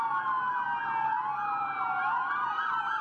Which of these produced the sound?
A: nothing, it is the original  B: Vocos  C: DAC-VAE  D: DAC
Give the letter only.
A